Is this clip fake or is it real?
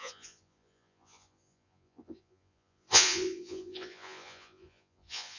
fake